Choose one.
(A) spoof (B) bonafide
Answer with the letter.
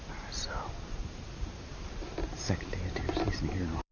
A